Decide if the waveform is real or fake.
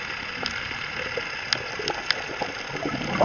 real